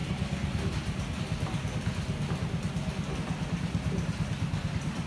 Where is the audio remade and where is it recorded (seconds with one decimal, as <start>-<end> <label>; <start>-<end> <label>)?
0.0-5.1 recorded